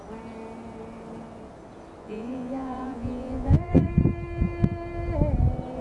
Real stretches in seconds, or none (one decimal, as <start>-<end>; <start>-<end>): 0.0-2.0; 3.9-5.8